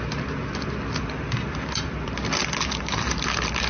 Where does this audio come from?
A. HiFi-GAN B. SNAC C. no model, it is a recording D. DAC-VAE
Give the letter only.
C